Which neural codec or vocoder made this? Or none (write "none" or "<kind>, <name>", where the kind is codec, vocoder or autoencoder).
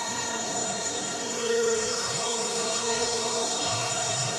codec, SNAC